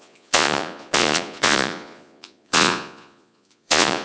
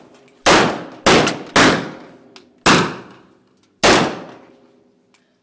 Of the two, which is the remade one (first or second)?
first